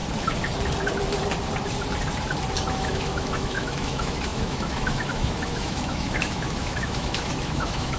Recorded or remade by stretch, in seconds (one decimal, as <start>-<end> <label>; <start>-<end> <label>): 0.0-2.7 recorded; 2.7-8.0 remade